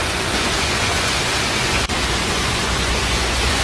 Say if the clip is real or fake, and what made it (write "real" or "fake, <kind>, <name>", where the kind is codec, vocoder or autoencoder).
fake, vocoder, Vocos